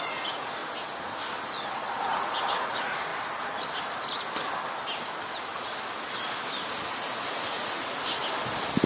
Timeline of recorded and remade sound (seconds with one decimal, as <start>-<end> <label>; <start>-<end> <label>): 0.0-0.6 remade; 0.6-1.5 recorded; 1.5-3.1 remade; 3.1-7.2 recorded; 7.2-8.2 remade; 8.2-8.9 recorded